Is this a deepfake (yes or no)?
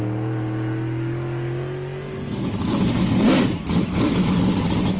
no